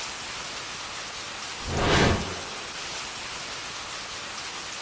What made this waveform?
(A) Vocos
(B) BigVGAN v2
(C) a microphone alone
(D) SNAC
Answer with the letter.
C